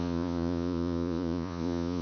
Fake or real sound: fake